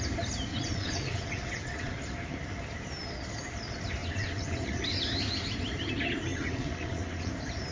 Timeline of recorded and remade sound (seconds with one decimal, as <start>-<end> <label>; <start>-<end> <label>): 0.0-0.5 recorded; 0.5-1.9 remade; 1.9-4.0 recorded; 4.0-4.8 remade; 4.8-6.3 recorded; 6.3-7.3 remade; 7.3-7.7 recorded